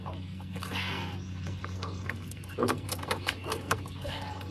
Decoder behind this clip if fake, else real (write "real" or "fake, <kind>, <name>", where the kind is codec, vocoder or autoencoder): fake, codec, SNAC